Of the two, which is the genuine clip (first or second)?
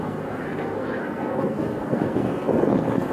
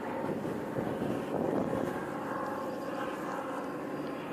second